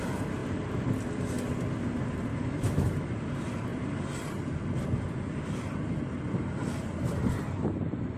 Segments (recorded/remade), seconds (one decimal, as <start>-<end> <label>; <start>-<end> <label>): 0.0-2.3 recorded; 2.3-3.1 remade; 3.1-8.2 recorded